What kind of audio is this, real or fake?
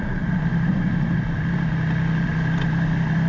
real